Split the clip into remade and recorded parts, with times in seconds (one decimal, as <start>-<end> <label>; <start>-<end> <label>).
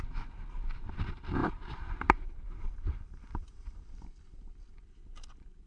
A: 0.0-1.4 recorded; 1.4-3.6 remade; 3.6-5.7 recorded